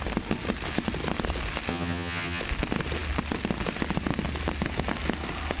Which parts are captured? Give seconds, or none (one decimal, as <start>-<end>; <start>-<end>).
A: 0.0-1.7; 2.4-5.6